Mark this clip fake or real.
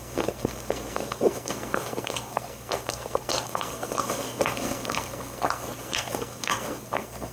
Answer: fake